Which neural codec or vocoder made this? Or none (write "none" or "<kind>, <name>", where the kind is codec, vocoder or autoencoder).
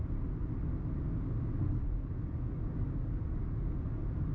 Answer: none